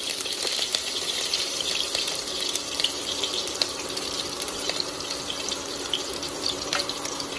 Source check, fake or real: fake